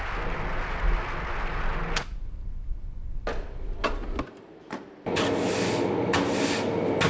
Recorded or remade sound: recorded